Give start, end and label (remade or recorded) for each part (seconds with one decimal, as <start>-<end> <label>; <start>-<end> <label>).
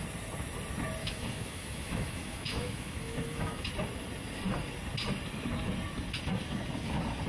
0.0-1.0 recorded; 1.0-3.7 remade; 3.7-7.3 recorded